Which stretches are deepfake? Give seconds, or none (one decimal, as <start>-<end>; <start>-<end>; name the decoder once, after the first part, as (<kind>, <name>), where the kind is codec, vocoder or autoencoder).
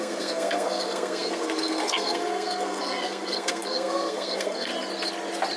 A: 0.0-4.7 (codec, SNAC)